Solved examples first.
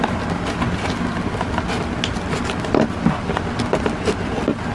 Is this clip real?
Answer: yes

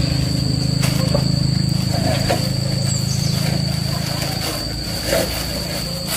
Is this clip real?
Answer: yes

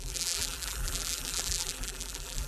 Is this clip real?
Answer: no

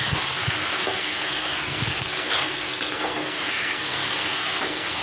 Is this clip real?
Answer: no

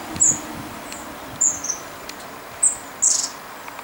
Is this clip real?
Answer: yes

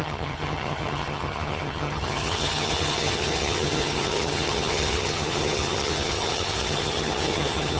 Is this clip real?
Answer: no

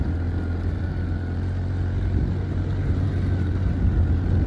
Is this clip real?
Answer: yes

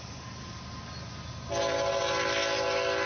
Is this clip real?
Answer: yes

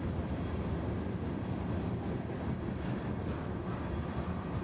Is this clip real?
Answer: yes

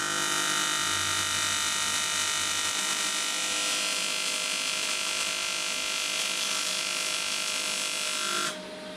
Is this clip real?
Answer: yes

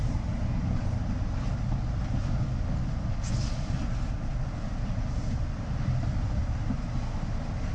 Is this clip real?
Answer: yes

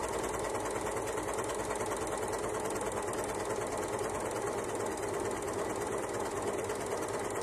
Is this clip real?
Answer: yes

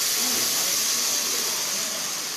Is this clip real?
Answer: yes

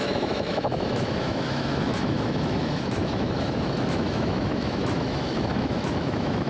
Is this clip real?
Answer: no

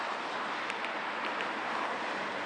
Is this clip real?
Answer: yes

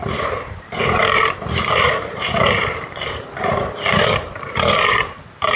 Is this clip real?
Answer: no